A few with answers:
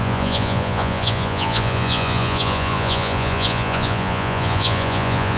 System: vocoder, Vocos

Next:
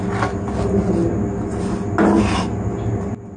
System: none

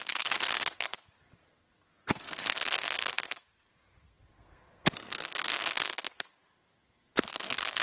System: codec, SNAC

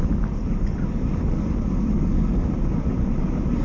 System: none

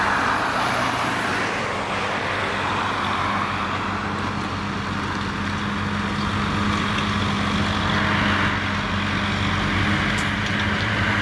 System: none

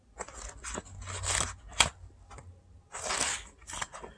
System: none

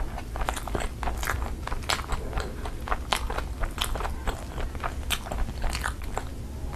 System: none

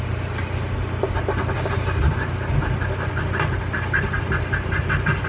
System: none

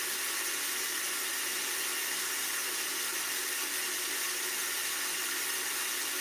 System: none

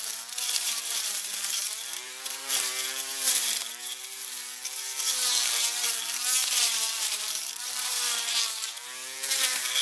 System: vocoder, BigVGAN v2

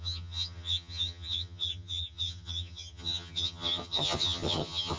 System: vocoder, HiFi-GAN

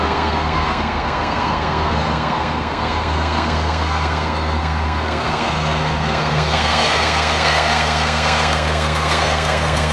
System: codec, SNAC